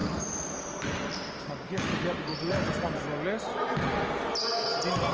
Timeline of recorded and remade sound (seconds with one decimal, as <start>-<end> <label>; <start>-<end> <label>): 0.0-1.4 recorded; 1.4-1.9 remade; 1.9-5.1 recorded